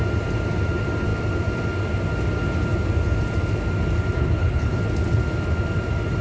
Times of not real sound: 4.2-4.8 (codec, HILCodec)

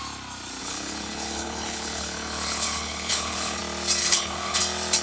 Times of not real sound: 0.6-3.6 (codec, HILCodec); 4.0-4.6

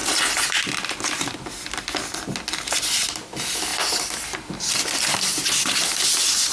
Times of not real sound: none

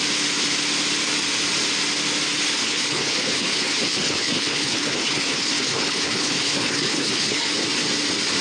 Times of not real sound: 2.6-7.5 (codec, HILCodec)

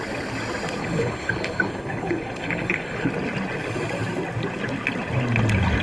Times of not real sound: 0.8-3.1 (codec, HILCodec)